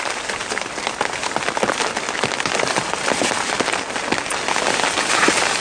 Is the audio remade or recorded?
recorded